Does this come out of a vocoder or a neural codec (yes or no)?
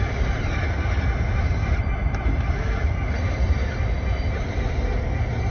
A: yes